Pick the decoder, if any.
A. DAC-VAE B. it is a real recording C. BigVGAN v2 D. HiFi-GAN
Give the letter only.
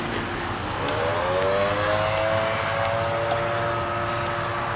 B